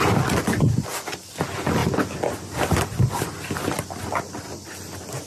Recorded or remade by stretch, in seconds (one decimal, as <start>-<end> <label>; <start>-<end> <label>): 0.0-1.8 recorded; 1.8-3.1 remade; 3.1-5.3 recorded